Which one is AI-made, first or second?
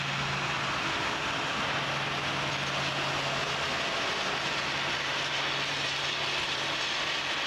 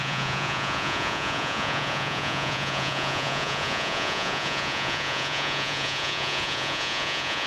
second